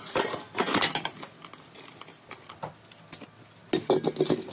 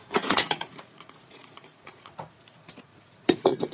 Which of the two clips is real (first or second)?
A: first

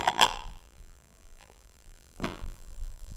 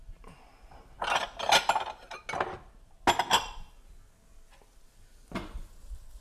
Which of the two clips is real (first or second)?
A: second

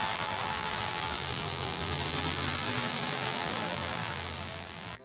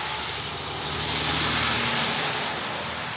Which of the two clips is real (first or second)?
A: second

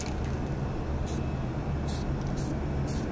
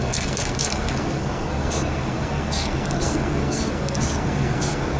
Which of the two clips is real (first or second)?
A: first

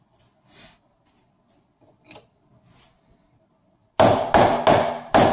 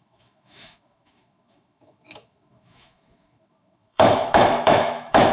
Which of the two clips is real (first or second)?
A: first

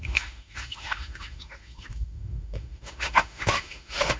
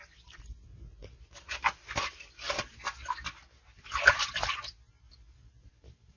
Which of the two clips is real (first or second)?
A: second